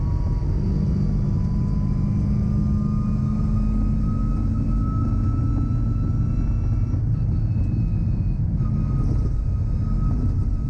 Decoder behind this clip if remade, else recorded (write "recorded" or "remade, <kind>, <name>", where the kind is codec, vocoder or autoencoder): recorded